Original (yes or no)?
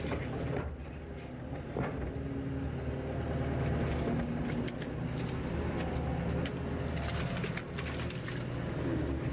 yes